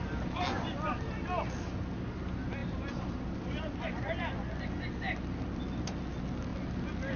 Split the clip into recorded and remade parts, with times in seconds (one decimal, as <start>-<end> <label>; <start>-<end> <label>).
0.0-2.6 recorded; 2.6-3.7 remade; 3.7-7.2 recorded

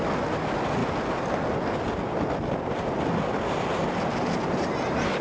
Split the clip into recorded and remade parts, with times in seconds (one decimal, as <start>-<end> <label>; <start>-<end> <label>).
0.0-5.2 recorded